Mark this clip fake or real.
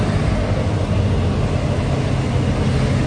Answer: real